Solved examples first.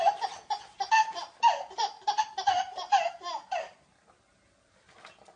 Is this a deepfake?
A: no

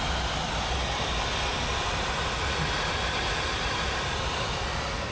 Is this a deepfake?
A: no